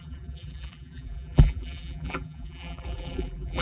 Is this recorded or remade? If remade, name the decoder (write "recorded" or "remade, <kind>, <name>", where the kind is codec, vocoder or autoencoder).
remade, vocoder, BigVGAN v2